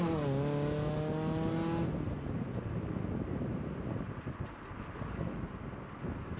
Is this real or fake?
real